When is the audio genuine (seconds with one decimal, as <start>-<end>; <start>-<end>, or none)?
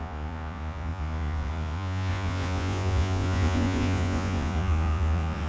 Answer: none